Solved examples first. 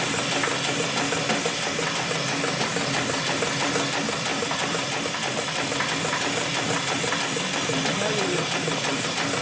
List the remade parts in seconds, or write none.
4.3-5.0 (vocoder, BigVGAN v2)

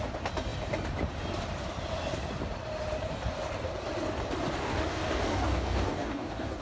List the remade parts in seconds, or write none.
4.6-6.6 (codec, DAC)

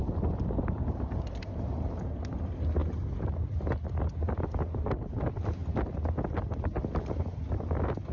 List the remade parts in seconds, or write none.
none